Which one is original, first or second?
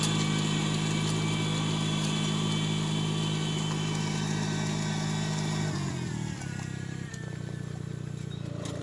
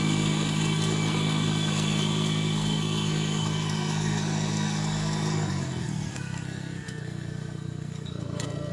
first